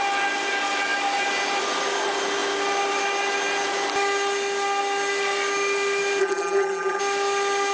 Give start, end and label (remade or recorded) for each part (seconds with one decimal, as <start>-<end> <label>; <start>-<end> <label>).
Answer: 0.0-6.2 recorded; 6.2-7.0 remade; 7.0-7.7 recorded